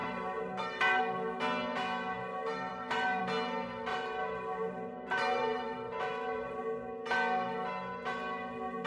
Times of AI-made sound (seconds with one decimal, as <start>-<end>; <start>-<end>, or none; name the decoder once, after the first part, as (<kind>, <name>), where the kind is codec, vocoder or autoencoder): 0.0-1.0 (vocoder, BigVGAN v2); 2.7-3.2; 3.9-6.6